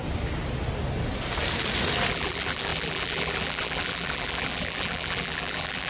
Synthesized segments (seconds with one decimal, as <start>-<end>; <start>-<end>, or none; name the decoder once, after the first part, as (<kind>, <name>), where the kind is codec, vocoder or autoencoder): 2.1-5.9 (vocoder, BigVGAN v2)